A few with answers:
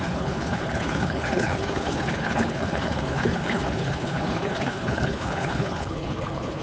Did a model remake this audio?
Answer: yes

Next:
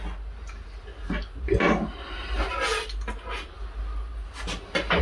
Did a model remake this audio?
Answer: no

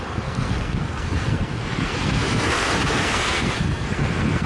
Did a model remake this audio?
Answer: yes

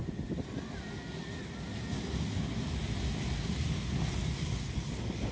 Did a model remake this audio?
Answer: no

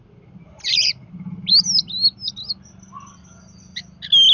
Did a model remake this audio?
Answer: no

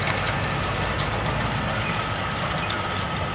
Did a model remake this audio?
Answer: no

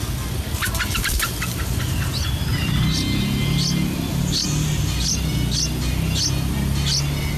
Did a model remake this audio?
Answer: no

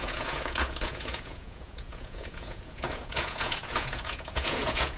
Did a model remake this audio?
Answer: yes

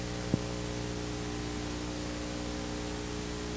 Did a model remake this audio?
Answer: no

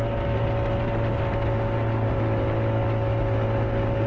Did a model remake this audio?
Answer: no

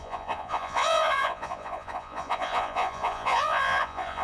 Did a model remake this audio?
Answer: yes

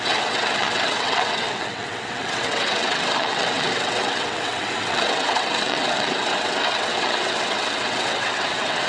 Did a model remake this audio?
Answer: yes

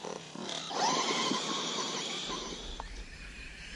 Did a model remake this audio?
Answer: yes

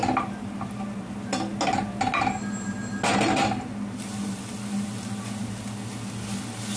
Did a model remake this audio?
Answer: no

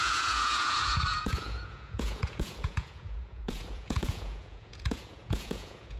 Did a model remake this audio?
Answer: yes